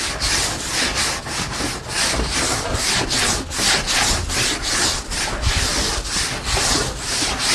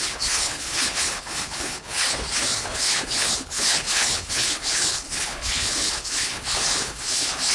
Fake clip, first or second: second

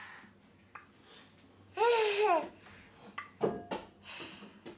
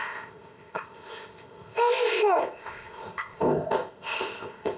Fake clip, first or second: second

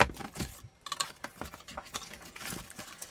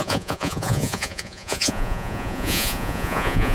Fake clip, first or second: second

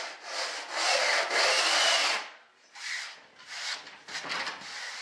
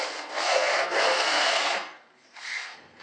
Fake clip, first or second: second